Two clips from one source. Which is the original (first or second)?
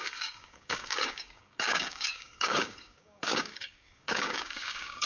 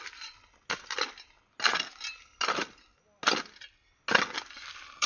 second